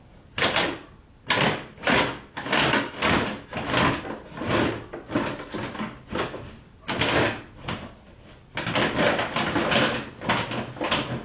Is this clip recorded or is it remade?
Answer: recorded